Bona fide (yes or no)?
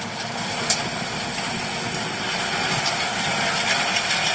yes